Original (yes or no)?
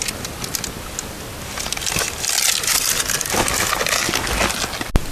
yes